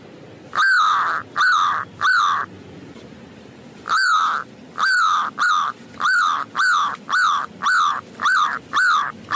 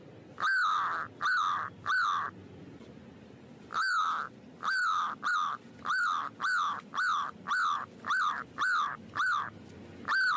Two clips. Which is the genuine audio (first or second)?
second